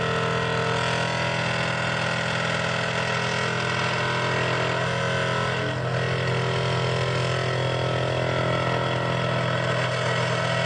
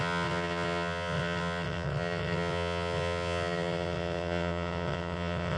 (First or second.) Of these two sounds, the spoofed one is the second